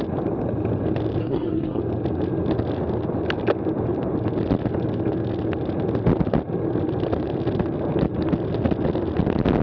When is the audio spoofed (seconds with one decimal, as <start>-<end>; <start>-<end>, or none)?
1.2-1.8